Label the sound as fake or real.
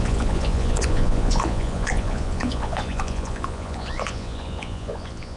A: fake